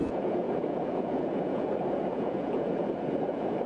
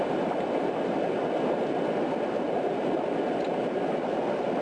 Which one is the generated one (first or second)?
first